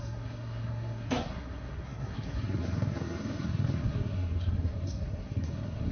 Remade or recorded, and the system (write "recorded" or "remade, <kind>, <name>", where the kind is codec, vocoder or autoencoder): remade, codec, SNAC